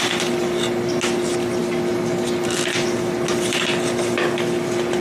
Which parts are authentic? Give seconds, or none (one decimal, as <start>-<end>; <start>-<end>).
0.0-5.0